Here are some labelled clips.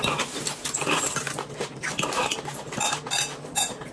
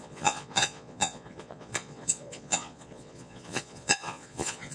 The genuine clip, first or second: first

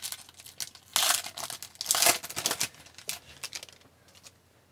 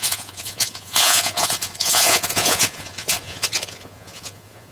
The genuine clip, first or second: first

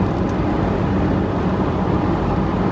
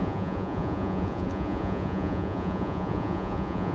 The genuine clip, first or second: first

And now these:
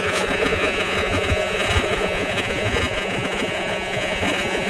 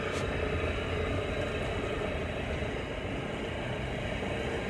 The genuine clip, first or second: second